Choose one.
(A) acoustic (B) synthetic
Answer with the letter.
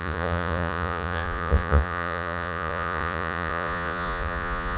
B